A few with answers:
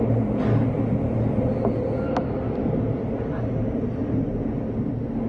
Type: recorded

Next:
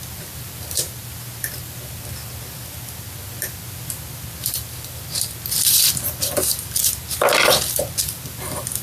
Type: remade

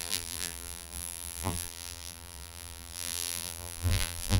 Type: remade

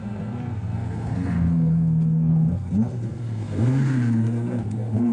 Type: remade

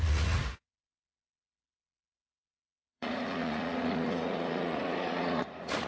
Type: remade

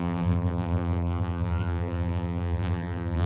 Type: remade